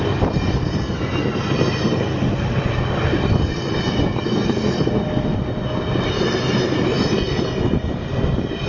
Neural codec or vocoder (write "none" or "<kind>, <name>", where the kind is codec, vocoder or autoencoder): none